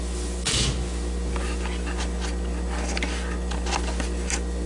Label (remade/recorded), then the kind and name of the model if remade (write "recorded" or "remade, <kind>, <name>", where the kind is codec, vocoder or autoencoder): recorded